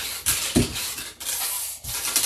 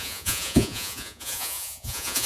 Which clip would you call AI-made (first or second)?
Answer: second